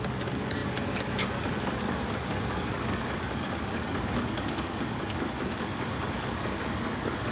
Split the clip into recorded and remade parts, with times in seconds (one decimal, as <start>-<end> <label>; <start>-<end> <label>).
0.0-7.3 remade